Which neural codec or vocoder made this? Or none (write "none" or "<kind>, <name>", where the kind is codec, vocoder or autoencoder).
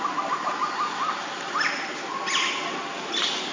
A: none